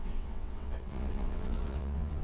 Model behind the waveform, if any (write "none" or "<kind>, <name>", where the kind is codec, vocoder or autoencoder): vocoder, WaveNeXt